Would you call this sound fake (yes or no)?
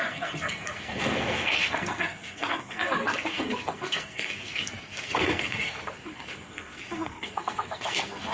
yes